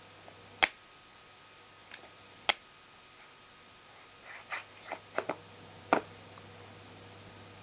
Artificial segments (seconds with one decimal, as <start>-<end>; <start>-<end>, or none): none